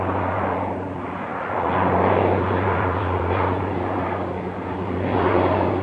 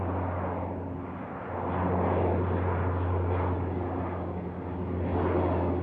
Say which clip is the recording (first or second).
second